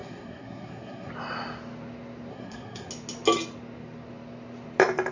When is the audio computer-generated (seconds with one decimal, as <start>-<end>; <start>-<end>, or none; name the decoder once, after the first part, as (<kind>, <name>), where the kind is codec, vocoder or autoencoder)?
0.0-1.1 (codec, SNAC); 2.3-2.9